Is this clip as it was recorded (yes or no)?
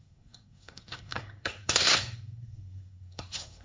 no